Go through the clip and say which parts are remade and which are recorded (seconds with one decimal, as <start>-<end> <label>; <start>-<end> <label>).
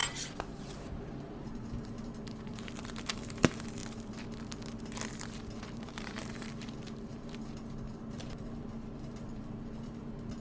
0.0-0.9 recorded; 0.9-3.8 remade; 3.8-5.6 recorded; 5.6-10.4 remade